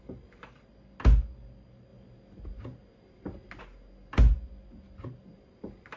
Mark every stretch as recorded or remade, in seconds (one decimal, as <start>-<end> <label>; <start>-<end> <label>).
0.0-6.0 recorded